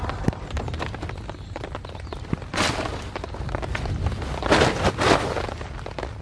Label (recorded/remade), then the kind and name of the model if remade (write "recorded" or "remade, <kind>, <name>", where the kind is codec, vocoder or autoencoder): recorded